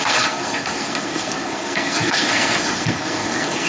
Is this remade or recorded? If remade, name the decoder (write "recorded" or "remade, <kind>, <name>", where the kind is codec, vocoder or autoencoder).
remade, codec, SNAC